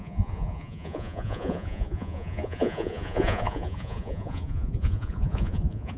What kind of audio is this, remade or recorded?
remade